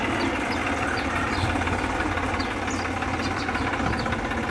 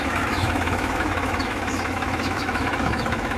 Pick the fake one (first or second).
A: second